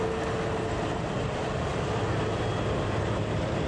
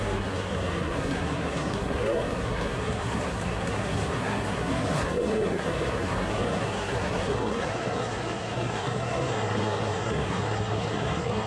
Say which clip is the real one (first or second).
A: first